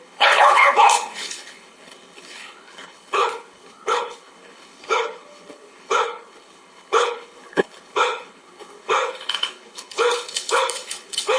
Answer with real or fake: fake